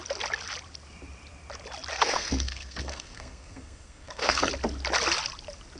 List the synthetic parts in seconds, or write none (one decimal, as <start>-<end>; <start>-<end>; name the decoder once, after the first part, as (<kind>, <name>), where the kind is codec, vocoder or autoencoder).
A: 1.9-4.5 (codec, SNAC)